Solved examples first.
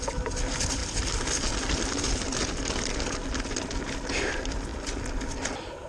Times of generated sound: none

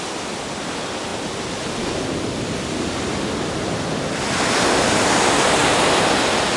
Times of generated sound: none